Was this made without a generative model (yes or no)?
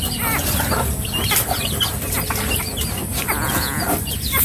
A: yes